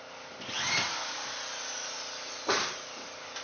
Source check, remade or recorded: recorded